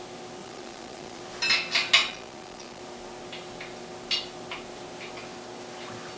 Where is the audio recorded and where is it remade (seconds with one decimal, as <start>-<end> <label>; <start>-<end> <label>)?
0.0-0.4 recorded; 0.4-1.2 remade; 1.2-2.0 recorded; 2.0-2.8 remade; 2.8-6.2 recorded